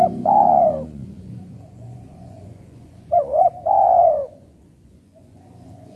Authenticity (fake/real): fake